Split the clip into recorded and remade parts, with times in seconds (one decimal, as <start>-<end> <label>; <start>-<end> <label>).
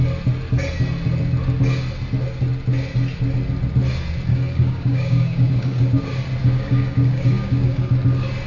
0.0-4.3 recorded; 4.3-6.0 remade; 6.0-6.4 recorded; 6.4-7.9 remade; 7.9-8.5 recorded